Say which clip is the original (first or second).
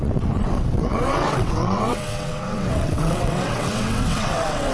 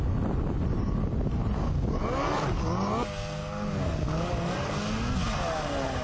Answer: second